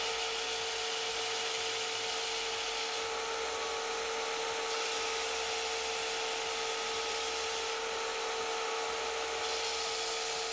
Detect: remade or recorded recorded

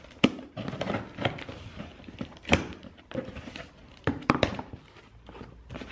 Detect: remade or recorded remade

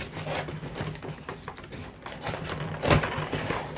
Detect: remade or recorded recorded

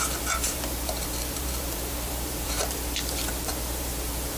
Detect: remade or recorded remade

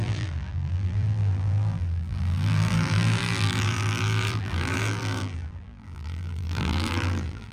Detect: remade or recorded remade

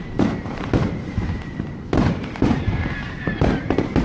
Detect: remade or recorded remade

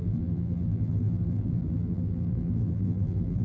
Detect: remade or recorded remade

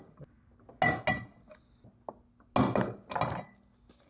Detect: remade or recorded recorded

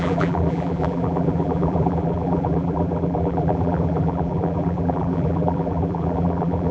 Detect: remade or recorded remade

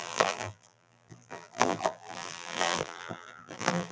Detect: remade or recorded remade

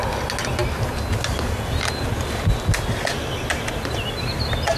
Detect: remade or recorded recorded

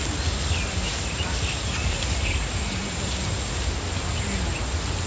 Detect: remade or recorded recorded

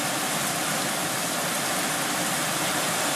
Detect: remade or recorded recorded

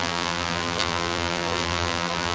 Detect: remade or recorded remade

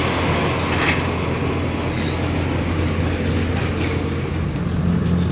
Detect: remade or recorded recorded